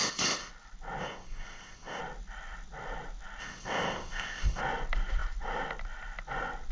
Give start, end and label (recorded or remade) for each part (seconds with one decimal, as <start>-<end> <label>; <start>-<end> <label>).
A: 0.0-0.5 remade; 0.5-1.0 recorded; 1.0-2.0 remade; 2.0-3.4 recorded; 3.4-4.6 remade; 4.6-6.7 recorded